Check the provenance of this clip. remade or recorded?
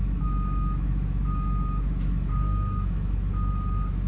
remade